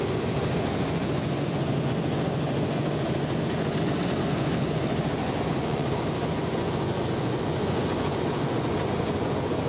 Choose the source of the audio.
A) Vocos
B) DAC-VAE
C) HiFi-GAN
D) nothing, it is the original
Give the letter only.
A